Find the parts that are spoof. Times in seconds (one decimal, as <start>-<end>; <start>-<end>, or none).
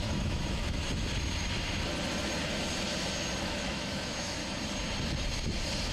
0.0-0.8; 3.4-4.4